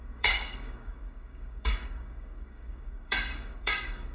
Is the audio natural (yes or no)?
no